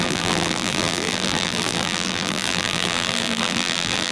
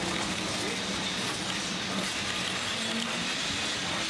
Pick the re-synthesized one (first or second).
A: first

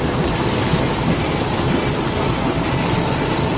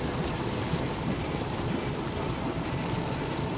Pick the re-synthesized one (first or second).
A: second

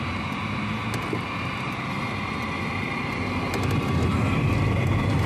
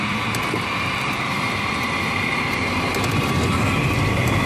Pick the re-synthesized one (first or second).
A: second